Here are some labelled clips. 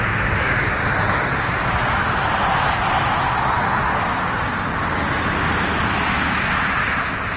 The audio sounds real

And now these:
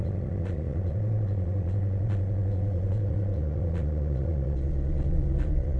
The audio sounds fake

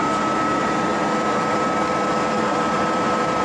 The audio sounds fake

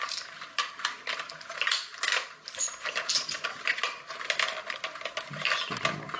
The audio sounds real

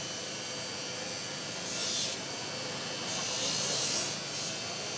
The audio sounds real